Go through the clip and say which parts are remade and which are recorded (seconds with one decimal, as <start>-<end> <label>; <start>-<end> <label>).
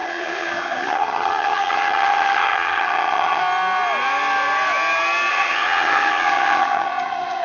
0.0-3.4 remade; 3.4-5.3 recorded; 5.3-7.4 remade